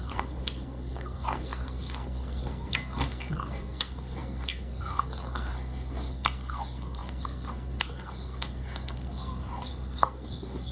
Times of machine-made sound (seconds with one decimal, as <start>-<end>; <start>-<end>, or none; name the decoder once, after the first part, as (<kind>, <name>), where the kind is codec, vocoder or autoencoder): 0.0-10.7 (codec, SNAC)